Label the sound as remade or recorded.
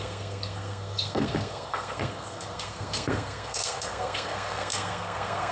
remade